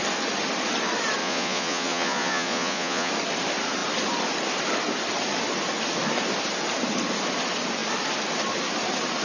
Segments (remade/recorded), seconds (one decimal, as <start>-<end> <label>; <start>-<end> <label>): 0.0-1.2 recorded; 1.2-3.1 remade; 3.1-9.2 recorded